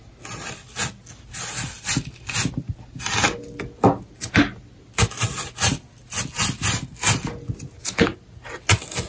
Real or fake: real